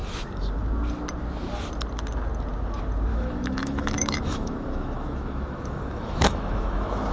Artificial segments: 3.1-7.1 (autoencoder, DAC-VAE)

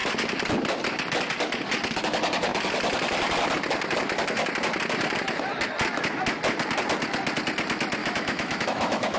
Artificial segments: 8.0-9.2 (autoencoder, DAC-VAE)

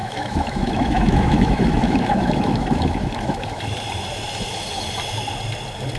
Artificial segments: 0.0-3.6 (autoencoder, DAC-VAE)

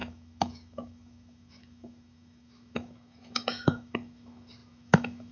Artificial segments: 0.0-5.3 (autoencoder, DAC-VAE)

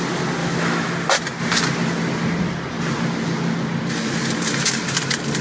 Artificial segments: 0.4-0.9 (autoencoder, DAC-VAE)

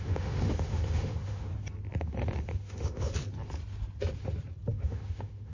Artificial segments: 0.0-1.5 (autoencoder, DAC-VAE); 2.0-3.1; 4.7-5.5